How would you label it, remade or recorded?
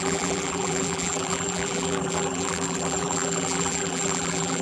remade